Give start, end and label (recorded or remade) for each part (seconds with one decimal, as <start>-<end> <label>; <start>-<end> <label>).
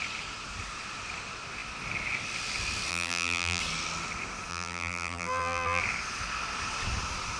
0.0-2.9 recorded; 2.9-3.6 remade; 3.6-4.5 recorded; 4.5-5.8 remade; 5.8-7.4 recorded